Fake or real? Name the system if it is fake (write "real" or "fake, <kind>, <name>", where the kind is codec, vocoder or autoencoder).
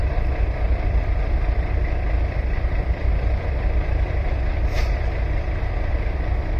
fake, vocoder, BigVGAN v2